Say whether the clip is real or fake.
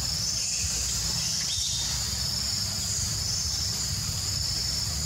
real